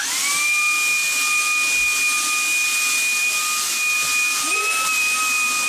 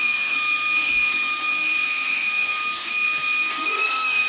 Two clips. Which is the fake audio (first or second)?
second